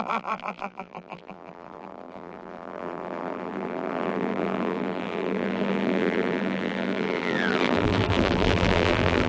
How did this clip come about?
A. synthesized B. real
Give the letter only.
A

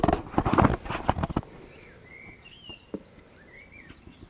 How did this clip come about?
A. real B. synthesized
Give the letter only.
A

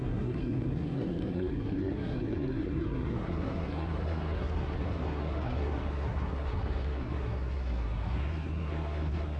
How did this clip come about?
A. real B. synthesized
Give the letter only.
B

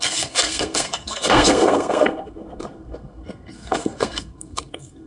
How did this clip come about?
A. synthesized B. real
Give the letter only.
A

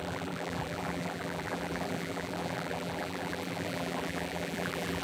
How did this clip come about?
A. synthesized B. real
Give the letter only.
A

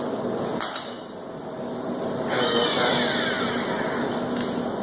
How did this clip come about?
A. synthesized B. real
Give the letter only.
B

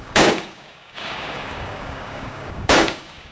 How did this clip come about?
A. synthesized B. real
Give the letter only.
A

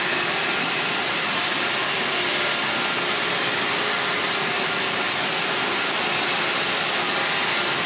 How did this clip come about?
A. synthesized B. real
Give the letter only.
B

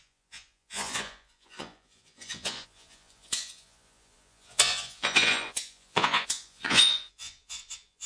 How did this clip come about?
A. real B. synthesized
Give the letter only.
B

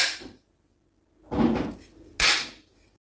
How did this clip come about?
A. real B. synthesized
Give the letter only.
A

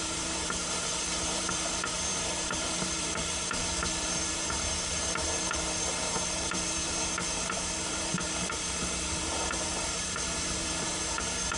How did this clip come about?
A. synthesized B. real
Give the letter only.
A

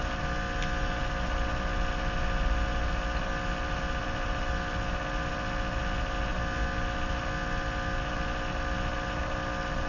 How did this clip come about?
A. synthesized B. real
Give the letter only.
B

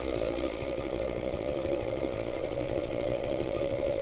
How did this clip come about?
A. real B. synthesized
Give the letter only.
B